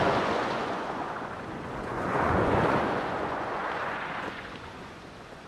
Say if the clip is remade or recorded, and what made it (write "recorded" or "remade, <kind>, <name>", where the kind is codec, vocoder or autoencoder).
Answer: remade, vocoder, Vocos